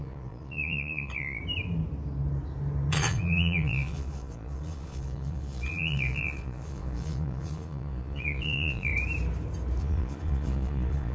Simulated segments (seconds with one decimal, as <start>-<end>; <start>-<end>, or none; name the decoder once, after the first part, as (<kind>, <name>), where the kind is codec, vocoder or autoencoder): 0.0-1.4 (vocoder, Vocos); 2.9-8.9; 9.8-11.1